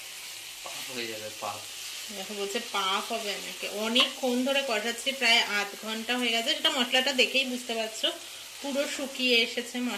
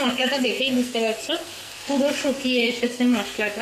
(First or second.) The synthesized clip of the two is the second